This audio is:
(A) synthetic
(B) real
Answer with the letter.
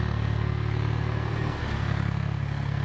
A